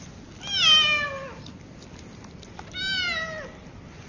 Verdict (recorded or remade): recorded